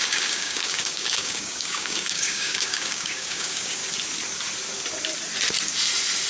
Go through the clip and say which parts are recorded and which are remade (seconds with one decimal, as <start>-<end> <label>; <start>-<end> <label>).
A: 0.0-3.8 remade; 3.8-6.3 recorded